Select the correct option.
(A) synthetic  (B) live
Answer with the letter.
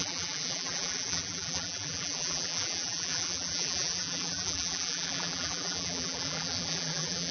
A